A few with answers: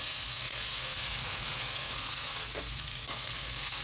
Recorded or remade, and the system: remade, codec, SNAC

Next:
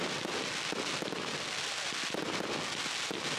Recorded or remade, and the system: recorded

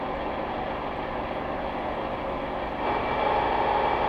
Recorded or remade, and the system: recorded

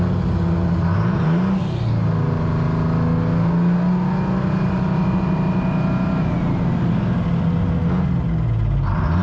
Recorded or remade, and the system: recorded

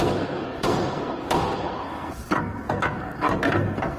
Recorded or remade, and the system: remade, codec, SNAC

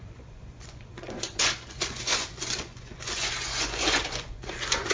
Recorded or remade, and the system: remade, vocoder, Vocos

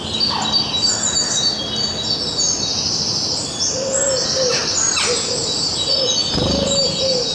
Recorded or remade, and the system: recorded